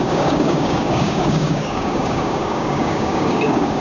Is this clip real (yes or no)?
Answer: no